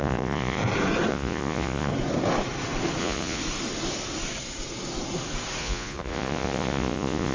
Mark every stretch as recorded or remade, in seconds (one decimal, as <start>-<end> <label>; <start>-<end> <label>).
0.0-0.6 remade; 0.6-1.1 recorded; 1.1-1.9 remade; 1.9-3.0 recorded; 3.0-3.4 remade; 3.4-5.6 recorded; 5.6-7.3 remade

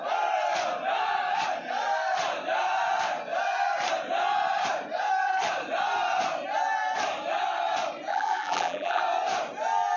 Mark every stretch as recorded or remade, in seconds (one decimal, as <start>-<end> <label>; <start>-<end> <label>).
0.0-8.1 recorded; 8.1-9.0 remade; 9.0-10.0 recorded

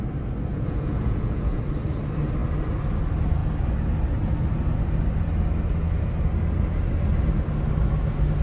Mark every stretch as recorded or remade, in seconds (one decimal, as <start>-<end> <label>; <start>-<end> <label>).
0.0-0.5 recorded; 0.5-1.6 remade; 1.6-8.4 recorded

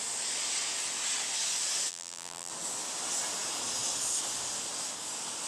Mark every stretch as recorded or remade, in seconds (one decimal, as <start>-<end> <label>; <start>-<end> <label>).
0.0-1.9 recorded; 1.9-2.5 remade; 2.5-5.5 recorded